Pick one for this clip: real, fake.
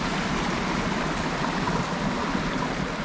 real